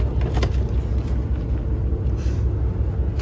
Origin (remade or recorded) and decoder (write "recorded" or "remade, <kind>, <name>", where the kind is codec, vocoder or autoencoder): recorded